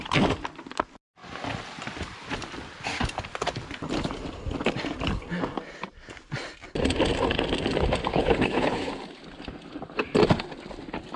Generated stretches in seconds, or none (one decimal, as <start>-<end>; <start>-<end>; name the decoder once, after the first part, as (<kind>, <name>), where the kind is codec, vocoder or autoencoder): 8.1-8.9 (codec, HILCodec)